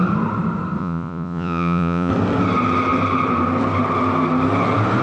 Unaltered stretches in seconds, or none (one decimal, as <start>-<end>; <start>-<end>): 0.0-0.8; 2.1-5.0